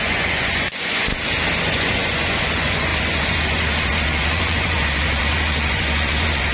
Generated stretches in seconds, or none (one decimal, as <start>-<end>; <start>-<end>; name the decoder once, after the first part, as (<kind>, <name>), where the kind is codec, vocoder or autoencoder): 0.0-1.1 (vocoder, Vocos); 1.6-6.5